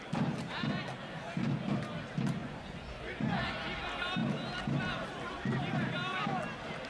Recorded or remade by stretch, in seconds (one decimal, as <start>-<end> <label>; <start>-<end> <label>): 0.0-2.4 recorded; 2.4-3.5 remade; 3.5-6.9 recorded